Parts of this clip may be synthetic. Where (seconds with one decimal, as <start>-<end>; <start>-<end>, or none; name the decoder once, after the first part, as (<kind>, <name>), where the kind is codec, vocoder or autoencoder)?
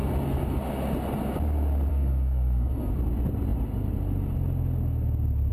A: 1.9-2.9 (codec, SNAC)